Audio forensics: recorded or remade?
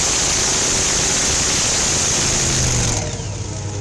recorded